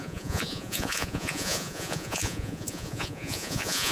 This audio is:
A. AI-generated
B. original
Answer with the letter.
A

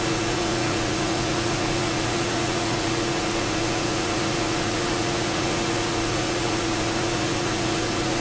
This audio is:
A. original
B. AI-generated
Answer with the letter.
B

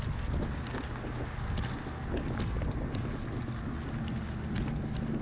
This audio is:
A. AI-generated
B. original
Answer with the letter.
B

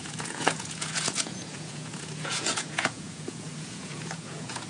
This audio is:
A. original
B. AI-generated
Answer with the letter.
B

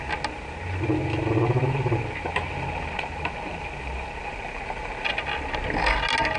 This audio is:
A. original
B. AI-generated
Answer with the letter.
A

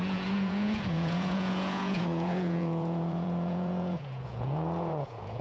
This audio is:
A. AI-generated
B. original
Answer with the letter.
A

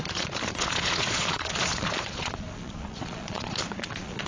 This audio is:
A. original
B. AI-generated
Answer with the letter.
B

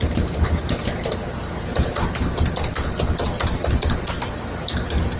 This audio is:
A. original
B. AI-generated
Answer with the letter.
A